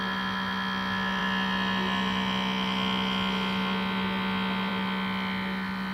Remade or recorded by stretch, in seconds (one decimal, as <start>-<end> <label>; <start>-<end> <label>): 0.0-5.9 recorded